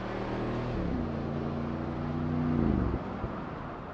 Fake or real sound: real